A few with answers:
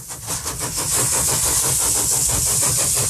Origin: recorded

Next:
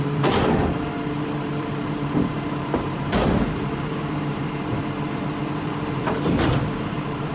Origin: remade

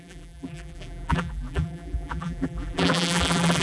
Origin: remade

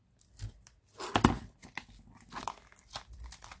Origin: recorded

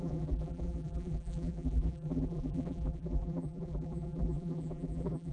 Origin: remade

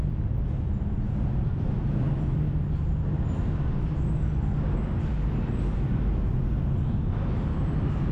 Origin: recorded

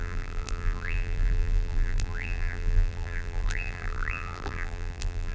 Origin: remade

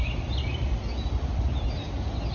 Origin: recorded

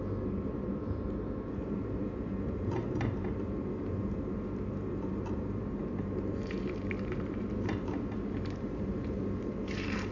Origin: remade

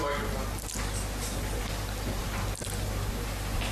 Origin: recorded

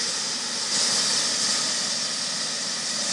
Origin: recorded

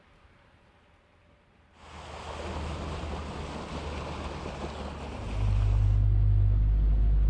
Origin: recorded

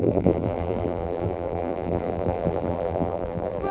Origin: remade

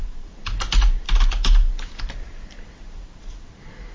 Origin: remade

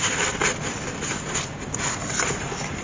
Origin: recorded